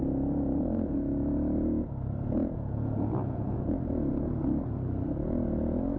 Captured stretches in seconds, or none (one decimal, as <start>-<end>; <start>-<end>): 0.0-2.4; 3.7-6.0